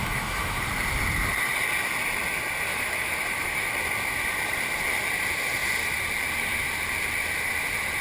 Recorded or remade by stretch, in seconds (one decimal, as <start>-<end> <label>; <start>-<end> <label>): 0.0-0.6 remade; 0.6-2.7 recorded; 2.7-3.7 remade; 3.7-8.0 recorded